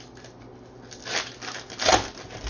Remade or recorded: recorded